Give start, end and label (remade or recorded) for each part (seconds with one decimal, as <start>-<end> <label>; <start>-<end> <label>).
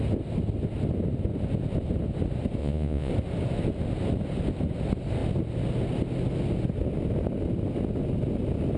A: 0.0-2.6 recorded; 2.6-3.1 remade; 3.1-8.8 recorded